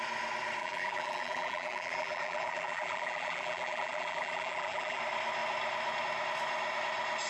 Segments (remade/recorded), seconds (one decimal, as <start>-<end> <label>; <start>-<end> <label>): 0.0-0.6 recorded; 0.6-5.0 remade; 5.0-7.3 recorded